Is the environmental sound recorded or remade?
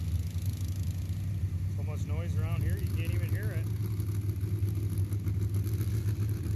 recorded